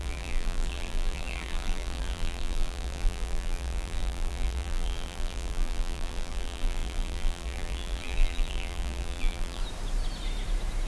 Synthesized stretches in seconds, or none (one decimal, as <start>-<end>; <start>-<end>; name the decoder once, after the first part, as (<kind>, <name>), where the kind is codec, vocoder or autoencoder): 0.0-9.6 (vocoder, BigVGAN v2)

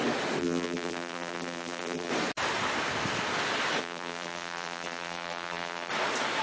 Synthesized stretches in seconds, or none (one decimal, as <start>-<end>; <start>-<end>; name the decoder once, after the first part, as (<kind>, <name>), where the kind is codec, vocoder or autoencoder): 0.4-2.1 (vocoder, BigVGAN v2); 3.8-5.9